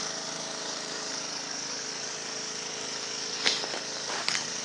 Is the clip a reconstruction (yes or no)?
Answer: yes